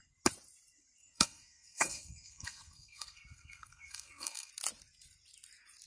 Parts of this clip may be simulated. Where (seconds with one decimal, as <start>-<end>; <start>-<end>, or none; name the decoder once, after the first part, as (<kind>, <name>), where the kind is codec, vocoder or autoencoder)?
1.0-4.5 (codec, SNAC)